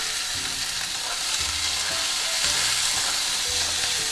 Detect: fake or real real